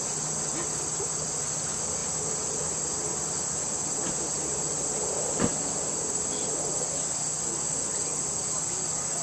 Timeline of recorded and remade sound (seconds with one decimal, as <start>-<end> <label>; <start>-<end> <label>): 0.0-9.2 recorded